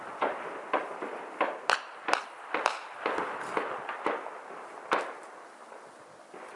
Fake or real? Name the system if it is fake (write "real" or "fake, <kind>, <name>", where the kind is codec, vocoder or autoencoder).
real